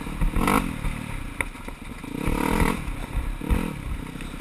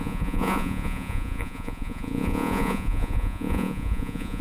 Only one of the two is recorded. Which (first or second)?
first